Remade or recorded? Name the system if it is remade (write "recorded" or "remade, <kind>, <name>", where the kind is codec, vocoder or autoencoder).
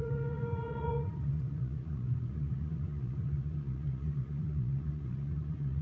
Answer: remade, vocoder, Vocos